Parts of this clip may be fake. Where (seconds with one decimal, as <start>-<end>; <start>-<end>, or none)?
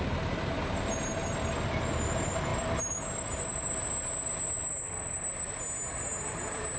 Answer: 0.0-1.2; 1.8-2.5; 6.0-6.8